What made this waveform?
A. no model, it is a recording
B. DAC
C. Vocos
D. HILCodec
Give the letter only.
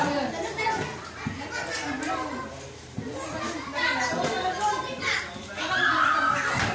A